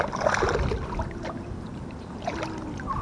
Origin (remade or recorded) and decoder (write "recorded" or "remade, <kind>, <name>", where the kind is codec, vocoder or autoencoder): recorded